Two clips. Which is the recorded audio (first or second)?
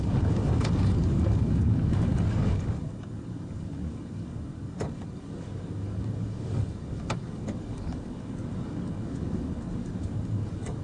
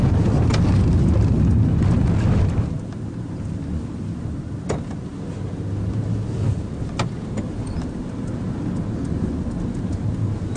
second